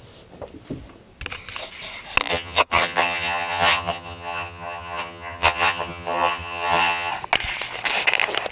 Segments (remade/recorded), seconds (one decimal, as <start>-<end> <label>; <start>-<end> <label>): 0.0-2.3 recorded; 2.3-7.1 remade; 7.1-8.5 recorded